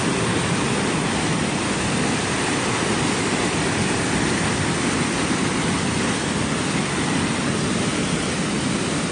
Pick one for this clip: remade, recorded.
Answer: remade